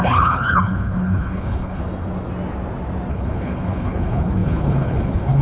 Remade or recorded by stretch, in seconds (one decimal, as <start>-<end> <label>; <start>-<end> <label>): 0.0-1.8 remade; 1.8-3.1 recorded; 3.1-5.4 remade